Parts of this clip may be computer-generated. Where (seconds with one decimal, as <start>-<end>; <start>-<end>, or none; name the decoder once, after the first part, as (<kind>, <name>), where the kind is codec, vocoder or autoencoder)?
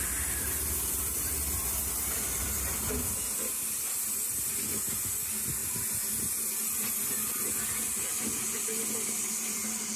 none